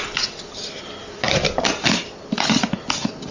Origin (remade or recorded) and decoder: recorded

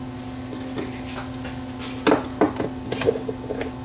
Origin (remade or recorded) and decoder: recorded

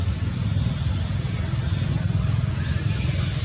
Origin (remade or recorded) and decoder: recorded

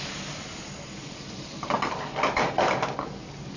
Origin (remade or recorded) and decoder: recorded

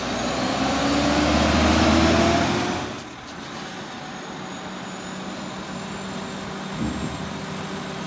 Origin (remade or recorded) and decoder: recorded